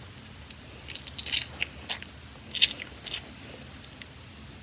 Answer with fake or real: real